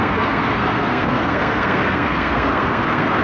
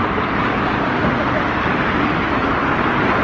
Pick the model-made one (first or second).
first